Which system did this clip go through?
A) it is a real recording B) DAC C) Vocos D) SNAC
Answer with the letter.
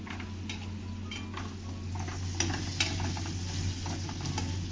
A